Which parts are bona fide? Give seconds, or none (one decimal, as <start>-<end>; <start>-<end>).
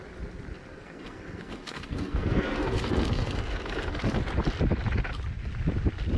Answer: 0.0-0.7; 4.2-6.2